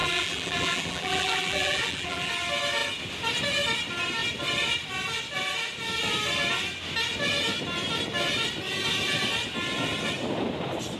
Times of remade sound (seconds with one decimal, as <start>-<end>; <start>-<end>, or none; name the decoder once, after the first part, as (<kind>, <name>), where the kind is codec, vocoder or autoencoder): 0.0-2.3 (vocoder, BigVGAN v2)